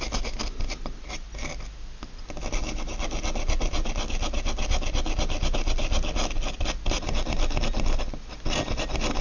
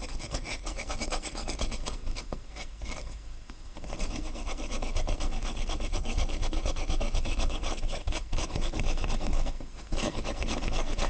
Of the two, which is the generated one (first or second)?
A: second